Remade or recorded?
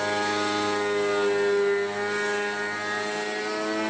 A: recorded